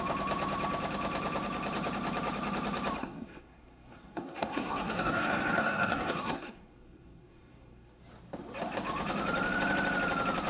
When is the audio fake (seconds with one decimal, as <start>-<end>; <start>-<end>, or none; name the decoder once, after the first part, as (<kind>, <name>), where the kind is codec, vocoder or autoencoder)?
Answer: 3.0-8.0 (codec, SNAC)